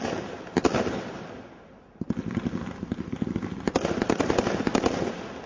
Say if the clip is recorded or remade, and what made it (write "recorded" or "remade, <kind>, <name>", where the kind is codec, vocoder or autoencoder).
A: recorded